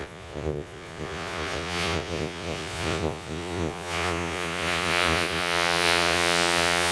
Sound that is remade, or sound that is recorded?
remade